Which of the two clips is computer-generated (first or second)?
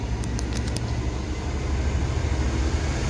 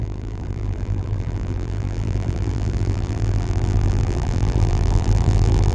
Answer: second